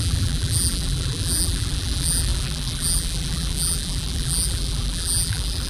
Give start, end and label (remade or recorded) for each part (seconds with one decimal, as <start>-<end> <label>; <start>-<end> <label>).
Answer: 0.0-5.7 remade